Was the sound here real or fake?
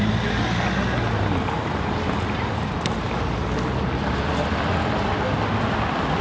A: real